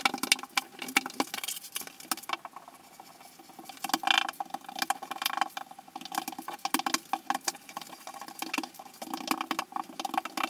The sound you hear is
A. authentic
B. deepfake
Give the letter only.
A